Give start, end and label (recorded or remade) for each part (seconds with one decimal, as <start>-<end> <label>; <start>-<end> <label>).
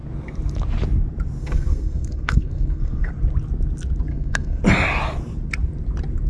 0.0-1.4 recorded; 1.4-3.1 remade; 3.1-4.1 recorded; 4.1-4.6 remade; 4.6-6.3 recorded